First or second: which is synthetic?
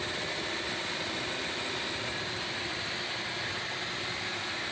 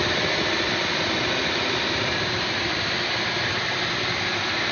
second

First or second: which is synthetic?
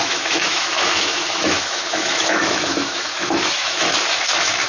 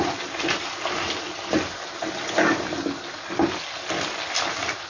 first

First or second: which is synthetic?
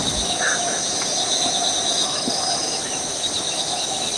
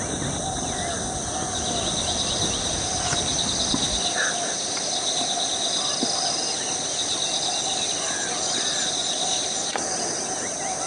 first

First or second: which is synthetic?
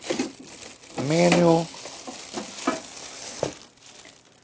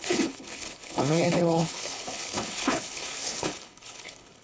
second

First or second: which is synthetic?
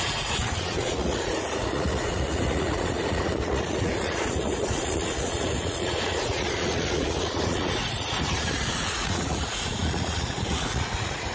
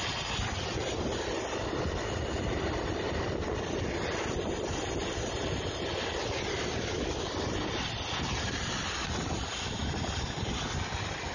first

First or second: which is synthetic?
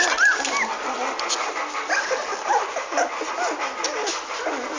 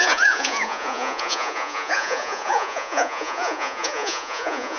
second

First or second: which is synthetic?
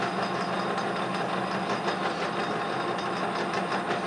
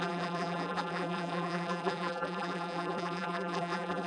second